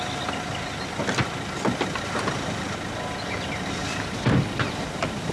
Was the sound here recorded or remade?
recorded